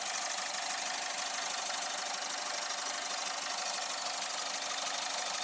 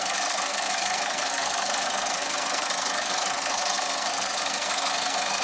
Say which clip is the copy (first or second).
second